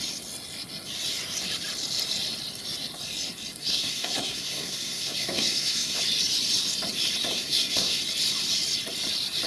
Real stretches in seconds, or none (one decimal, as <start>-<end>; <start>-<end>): 0.0-3.6; 6.0-7.3; 8.0-9.5

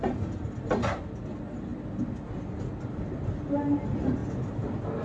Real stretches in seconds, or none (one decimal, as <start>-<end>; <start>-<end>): 0.0-5.0